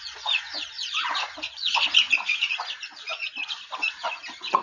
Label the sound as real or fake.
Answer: fake